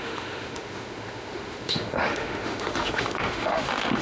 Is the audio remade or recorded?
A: remade